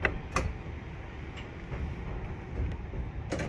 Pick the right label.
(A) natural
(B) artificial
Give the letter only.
A